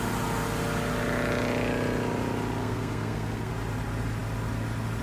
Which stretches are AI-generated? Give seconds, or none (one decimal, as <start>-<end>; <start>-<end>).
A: 2.6-3.5

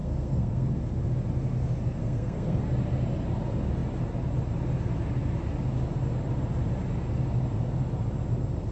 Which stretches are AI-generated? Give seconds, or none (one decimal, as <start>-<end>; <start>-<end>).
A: 0.0-0.8; 2.0-2.6

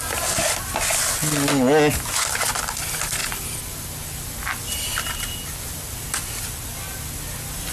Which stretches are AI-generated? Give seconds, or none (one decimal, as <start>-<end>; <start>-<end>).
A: none

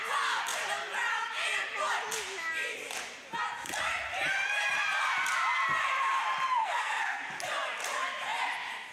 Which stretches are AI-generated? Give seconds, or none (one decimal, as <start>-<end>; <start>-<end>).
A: 6.6-7.3

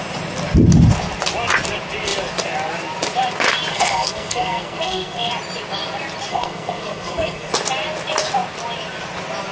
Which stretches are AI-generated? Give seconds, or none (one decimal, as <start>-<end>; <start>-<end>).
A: 3.7-5.3; 6.3-7.5

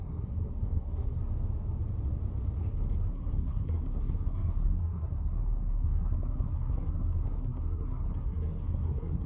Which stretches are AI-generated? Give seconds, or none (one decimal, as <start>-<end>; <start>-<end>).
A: 0.0-1.2; 3.1-9.3